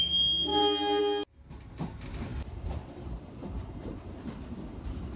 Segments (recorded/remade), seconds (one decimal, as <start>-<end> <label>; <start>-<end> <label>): 0.0-5.2 recorded